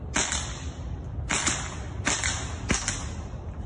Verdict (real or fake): real